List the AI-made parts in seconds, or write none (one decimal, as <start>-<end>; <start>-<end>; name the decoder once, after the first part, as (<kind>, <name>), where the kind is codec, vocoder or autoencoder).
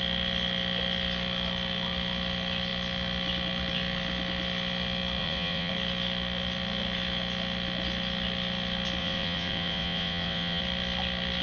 5.2-5.7 (vocoder, WaveNeXt); 9.0-10.6